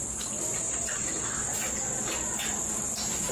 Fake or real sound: real